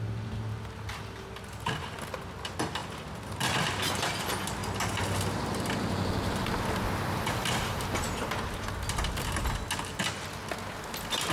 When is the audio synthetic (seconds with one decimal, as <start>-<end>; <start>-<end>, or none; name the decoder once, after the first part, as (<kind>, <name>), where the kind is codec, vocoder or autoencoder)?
none